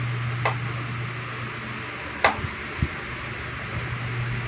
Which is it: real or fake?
real